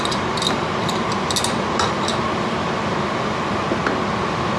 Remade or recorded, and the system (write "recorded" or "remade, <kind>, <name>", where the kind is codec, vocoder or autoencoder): recorded